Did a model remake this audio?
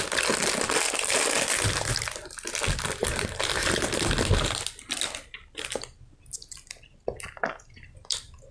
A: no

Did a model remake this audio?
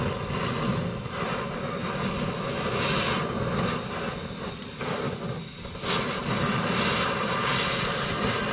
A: no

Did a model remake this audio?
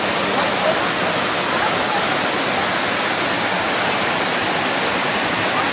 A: no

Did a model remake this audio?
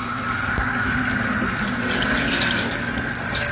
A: no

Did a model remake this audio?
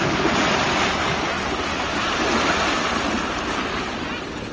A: no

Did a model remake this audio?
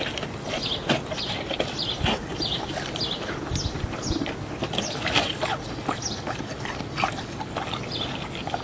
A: no